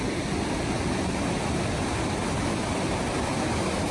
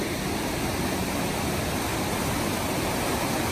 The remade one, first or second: first